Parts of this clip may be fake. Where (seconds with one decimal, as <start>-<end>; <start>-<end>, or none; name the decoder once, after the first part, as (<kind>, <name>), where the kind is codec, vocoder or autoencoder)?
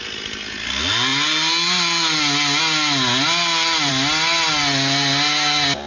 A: none